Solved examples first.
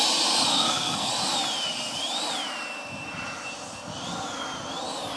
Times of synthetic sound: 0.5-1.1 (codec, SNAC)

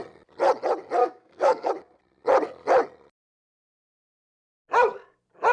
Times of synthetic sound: 1.0-1.7 (codec, SNAC)

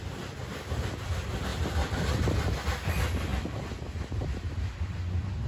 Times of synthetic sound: 1.5-2.1 (vocoder, BigVGAN v2); 3.3-4.1

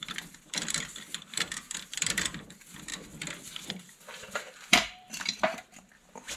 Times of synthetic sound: 0.0-2.9 (vocoder, BigVGAN v2); 3.7-6.4

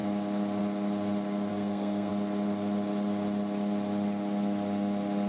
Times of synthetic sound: 1.5-2.1 (codec, SNAC)